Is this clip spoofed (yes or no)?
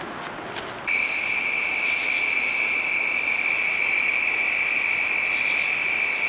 no